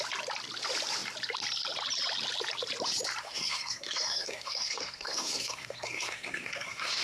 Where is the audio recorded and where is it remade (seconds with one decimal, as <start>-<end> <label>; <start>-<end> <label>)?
0.0-3.2 recorded; 3.2-7.0 remade